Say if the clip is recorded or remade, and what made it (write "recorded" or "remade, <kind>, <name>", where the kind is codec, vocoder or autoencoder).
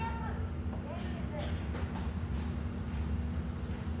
recorded